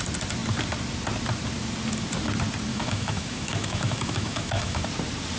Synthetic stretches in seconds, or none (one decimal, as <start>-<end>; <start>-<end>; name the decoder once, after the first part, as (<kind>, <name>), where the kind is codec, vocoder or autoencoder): 2.7-4.8 (autoencoder, DAC-VAE)